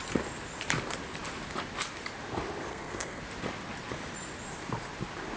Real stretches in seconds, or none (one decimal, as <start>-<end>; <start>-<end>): 0.0-2.7; 3.2-5.4